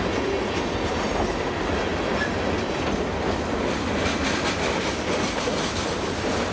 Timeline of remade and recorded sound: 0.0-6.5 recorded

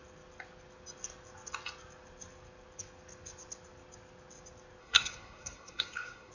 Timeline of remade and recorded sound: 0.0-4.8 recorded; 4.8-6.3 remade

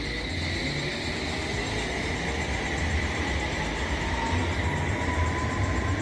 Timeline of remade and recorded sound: 0.0-6.0 recorded

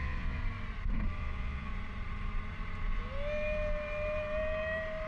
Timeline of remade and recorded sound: 0.0-0.4 remade; 0.4-1.2 recorded; 1.2-1.7 remade; 1.7-5.1 recorded

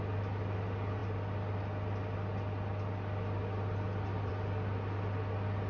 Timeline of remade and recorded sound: 0.0-5.7 recorded

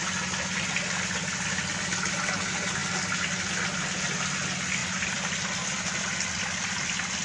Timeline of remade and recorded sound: 0.0-4.8 recorded; 4.8-6.0 remade; 6.0-7.2 recorded

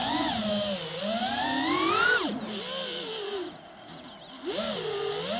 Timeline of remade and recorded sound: 0.0-0.5 remade; 0.5-5.4 recorded

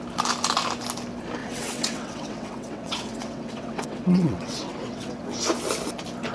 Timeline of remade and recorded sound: 0.0-1.4 recorded; 1.4-5.2 remade; 5.2-6.3 recorded